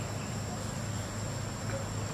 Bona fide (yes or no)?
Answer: yes